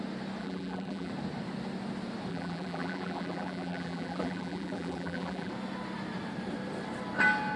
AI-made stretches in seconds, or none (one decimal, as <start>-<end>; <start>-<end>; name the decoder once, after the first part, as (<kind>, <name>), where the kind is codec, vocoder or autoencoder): 0.4-1.1 (vocoder, BigVGAN v2); 2.3-5.5